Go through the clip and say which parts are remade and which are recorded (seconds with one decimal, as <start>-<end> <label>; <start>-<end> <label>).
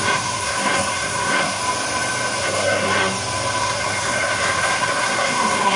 0.0-1.6 remade; 1.6-2.4 recorded; 2.4-3.0 remade; 3.0-3.6 recorded; 3.6-5.8 remade